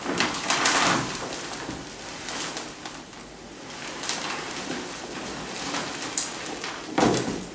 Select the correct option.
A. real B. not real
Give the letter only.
A